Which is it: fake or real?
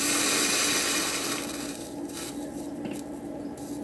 real